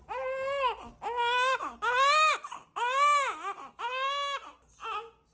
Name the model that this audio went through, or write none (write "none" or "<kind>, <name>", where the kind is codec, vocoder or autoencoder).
none